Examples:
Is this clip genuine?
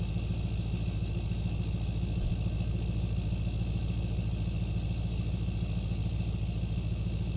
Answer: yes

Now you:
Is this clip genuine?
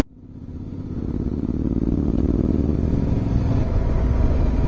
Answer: no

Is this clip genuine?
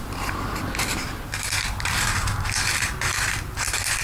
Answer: yes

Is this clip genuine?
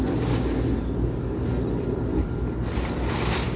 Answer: yes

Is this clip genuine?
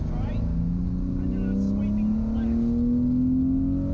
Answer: yes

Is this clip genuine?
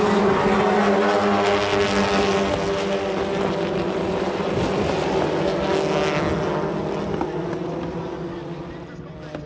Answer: yes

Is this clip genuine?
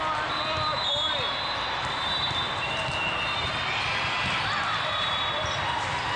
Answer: no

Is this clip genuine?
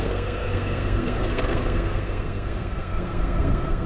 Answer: no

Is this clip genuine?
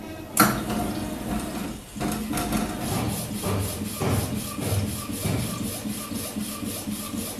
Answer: yes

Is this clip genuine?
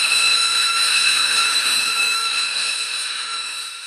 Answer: no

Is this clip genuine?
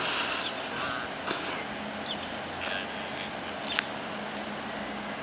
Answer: yes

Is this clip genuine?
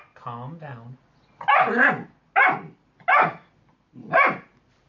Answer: yes